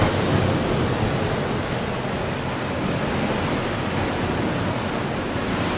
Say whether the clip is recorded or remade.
recorded